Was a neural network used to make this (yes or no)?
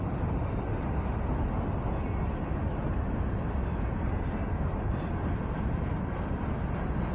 no